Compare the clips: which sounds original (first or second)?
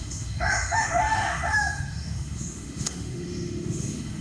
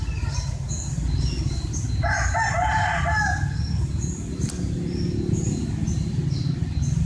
second